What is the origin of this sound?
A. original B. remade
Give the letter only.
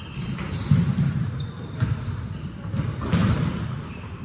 B